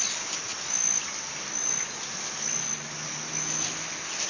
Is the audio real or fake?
real